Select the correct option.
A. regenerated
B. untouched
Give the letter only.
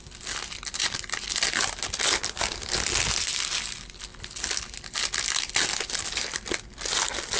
B